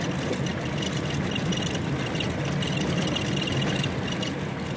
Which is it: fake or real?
real